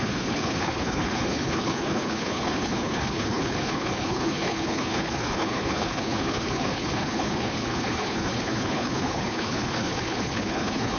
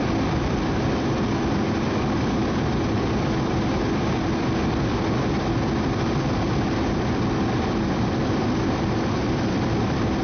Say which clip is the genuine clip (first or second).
second